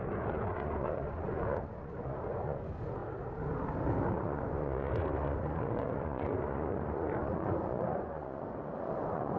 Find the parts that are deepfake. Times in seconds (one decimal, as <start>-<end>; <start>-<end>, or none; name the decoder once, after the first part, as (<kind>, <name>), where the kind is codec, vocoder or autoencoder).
0.0-3.0 (vocoder, Vocos); 4.1-9.4